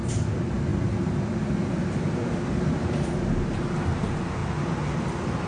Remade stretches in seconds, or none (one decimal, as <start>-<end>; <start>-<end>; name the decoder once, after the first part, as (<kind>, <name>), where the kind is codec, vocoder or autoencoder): 0.7-4.0 (vocoder, BigVGAN v2)

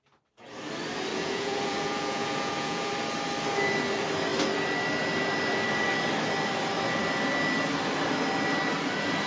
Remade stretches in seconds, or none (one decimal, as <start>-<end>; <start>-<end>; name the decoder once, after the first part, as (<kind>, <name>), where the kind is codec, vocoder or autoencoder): 1.1-2.9 (vocoder, Vocos)

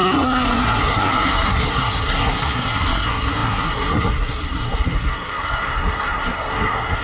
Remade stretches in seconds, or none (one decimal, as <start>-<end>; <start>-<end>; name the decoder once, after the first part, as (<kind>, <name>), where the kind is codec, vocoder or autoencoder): 0.0-7.0 (codec, SNAC)

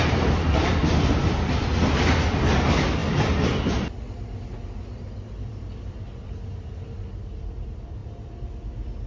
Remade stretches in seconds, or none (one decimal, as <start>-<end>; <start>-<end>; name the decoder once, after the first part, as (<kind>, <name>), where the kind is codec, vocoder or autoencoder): none

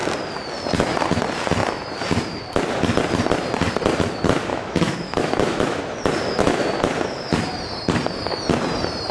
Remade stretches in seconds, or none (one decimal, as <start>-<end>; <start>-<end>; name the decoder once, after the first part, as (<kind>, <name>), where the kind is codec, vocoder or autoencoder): 4.5-5.8 (autoencoder, DAC-VAE)

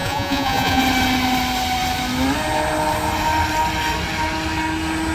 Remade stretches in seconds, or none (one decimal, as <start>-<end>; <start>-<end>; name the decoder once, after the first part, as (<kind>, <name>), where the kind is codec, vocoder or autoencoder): 0.0-0.8 (vocoder, Vocos)

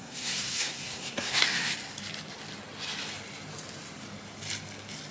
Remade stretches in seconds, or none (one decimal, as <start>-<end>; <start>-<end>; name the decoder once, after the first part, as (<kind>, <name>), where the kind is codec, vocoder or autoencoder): 0.0-1.7 (codec, SNAC)